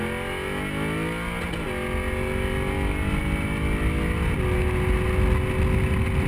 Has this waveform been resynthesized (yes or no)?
no